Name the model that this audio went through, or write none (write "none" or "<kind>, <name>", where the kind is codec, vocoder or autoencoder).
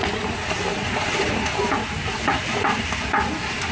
none